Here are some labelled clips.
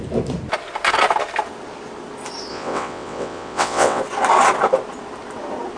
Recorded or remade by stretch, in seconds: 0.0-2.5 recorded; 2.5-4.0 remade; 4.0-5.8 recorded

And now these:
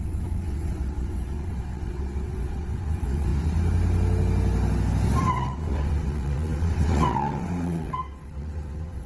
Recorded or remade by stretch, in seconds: 0.0-3.3 remade; 3.3-5.2 recorded; 5.2-9.1 remade

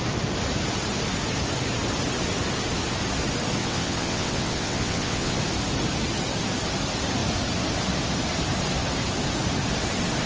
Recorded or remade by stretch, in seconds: 0.0-3.6 recorded; 3.6-5.4 remade; 5.4-10.3 recorded

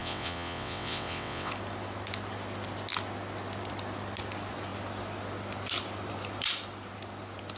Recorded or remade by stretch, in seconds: 0.0-1.5 remade; 1.5-7.6 recorded